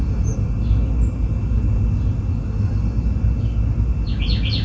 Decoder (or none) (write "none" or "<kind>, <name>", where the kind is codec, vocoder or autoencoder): none